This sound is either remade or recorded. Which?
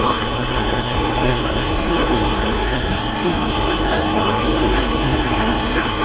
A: remade